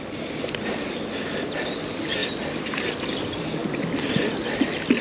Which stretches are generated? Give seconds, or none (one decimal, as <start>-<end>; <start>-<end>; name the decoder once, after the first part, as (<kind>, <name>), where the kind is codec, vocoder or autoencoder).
0.0-2.2 (vocoder, BigVGAN v2); 2.7-3.6